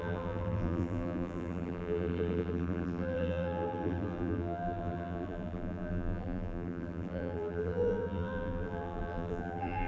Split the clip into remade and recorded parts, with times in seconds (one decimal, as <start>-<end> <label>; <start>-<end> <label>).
0.0-9.9 remade